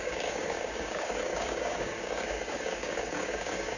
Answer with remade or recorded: remade